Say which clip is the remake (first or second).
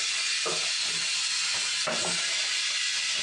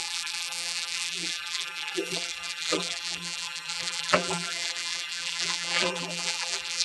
second